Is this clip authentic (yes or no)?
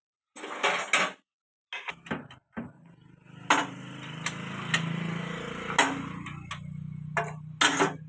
yes